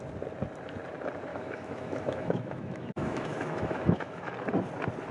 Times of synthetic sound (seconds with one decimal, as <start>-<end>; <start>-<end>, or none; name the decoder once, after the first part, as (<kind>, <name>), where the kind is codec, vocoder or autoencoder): 1.3-4.3 (autoencoder, DAC-VAE)